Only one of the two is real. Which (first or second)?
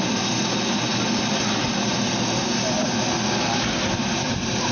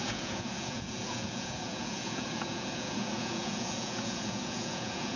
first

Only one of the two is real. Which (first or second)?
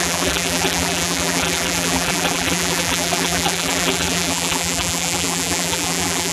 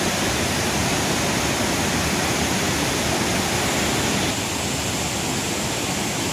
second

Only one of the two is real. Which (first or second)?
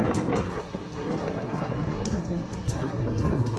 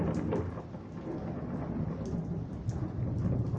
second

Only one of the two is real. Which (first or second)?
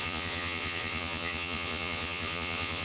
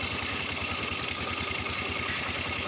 second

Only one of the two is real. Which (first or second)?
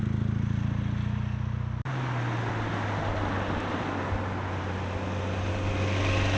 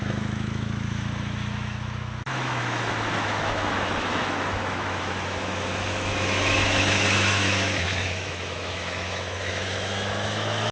first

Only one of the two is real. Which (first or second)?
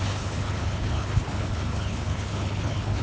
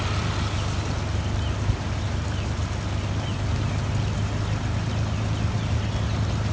second